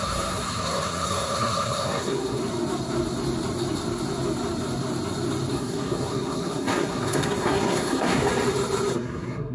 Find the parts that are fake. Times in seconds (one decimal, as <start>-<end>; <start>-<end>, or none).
0.0-2.4; 5.5-8.2; 8.9-9.5